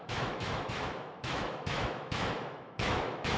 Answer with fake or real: fake